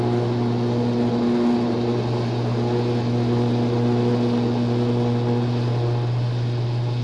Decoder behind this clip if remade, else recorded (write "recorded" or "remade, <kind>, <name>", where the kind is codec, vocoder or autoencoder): recorded